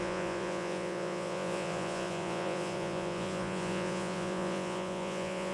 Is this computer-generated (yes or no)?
yes